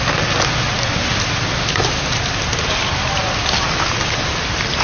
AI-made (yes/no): no